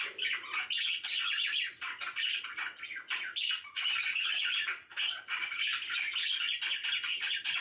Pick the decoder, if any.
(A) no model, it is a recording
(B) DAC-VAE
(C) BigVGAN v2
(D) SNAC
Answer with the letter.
A